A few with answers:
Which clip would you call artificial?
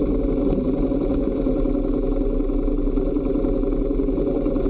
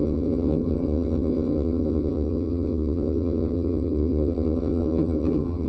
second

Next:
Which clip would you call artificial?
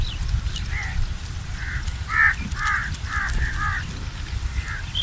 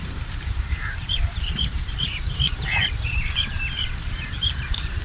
second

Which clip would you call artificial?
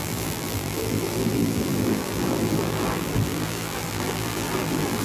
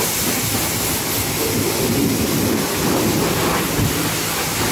first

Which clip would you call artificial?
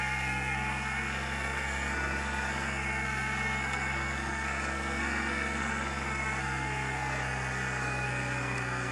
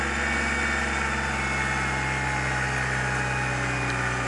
first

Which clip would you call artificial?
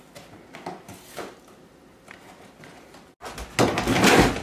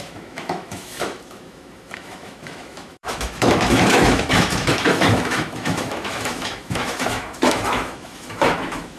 second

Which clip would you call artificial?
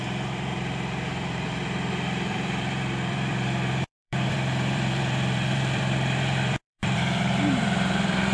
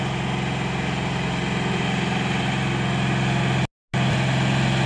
first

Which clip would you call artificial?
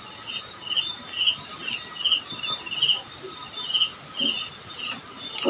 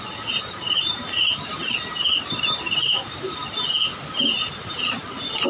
second